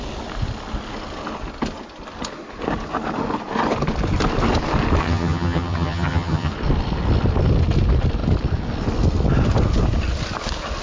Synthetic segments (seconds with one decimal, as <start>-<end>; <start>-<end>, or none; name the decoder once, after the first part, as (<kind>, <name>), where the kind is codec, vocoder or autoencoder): 5.0-6.5 (vocoder, HiFi-GAN)